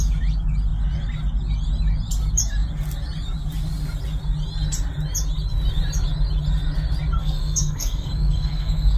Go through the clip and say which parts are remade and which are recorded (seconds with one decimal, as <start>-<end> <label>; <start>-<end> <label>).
0.0-7.2 recorded; 7.2-9.0 remade